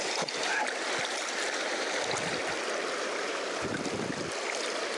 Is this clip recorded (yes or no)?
no